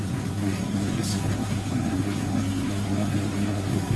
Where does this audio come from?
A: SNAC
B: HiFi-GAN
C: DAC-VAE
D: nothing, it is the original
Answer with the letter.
A